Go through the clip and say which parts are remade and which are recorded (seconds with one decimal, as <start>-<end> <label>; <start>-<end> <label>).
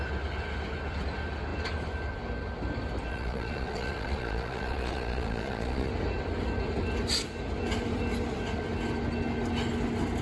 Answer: 0.0-3.1 recorded; 3.1-5.9 remade; 5.9-10.2 recorded